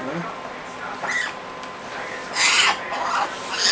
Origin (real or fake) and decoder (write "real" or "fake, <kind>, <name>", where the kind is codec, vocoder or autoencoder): real